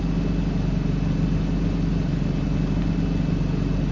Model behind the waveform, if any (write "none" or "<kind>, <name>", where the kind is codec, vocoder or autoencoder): none